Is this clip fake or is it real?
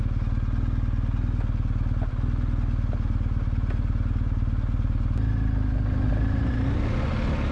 real